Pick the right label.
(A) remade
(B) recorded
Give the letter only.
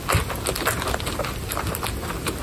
B